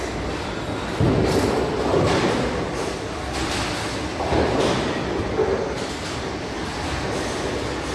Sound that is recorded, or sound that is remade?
recorded